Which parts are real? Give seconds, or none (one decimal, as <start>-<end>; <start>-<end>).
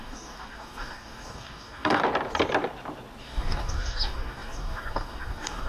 2.0-3.2